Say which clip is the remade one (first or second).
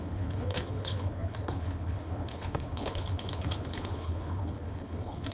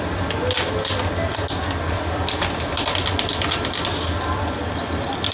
first